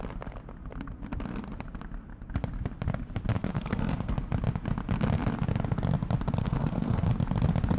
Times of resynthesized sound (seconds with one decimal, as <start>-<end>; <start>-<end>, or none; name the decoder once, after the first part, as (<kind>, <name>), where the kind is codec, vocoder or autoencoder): 3.3-4.1 (codec, SNAC); 6.4-7.1